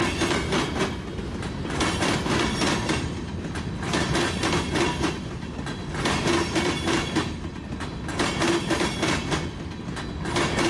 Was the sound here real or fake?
real